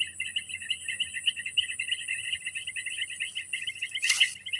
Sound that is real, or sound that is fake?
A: real